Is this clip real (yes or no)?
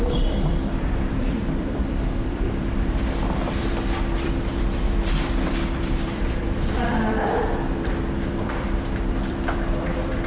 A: no